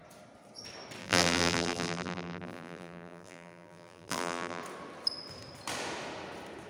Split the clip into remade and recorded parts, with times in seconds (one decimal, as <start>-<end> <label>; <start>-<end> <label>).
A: 0.0-1.0 recorded; 1.0-4.6 remade; 4.6-6.7 recorded